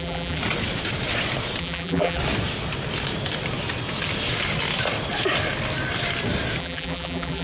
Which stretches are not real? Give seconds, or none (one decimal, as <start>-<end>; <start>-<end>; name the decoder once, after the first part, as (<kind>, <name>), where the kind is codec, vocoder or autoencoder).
0.0-0.4 (vocoder, BigVGAN v2); 1.6-2.2; 6.6-7.4